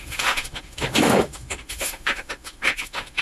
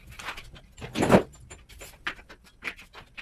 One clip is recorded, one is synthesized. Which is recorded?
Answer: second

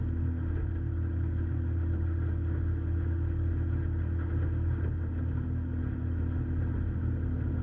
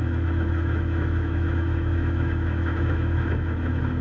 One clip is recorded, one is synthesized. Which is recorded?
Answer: first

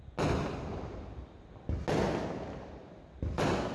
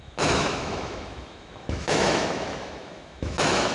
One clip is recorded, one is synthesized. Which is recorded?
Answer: first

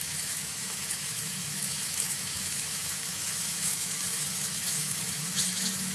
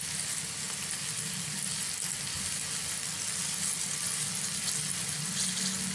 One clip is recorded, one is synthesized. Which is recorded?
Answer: second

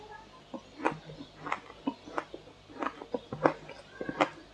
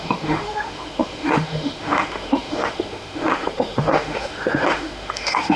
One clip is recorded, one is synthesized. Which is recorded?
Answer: first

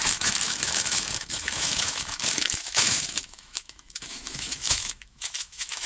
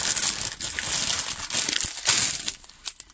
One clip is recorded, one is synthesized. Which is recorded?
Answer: second